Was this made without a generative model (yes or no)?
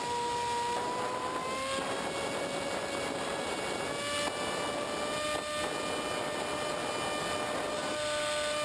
yes